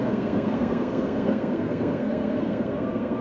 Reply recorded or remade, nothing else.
remade